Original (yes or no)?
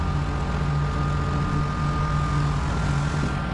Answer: yes